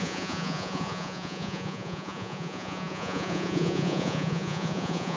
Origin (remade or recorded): remade